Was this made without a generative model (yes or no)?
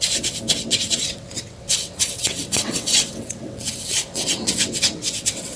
no